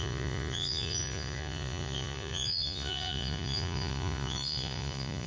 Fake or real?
fake